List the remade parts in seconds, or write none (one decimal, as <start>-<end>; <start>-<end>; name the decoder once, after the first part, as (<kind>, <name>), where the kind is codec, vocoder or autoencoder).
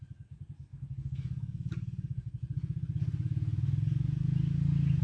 0.7-2.3 (codec, DAC)